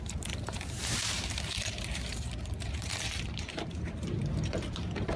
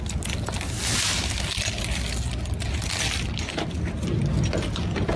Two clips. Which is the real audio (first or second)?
second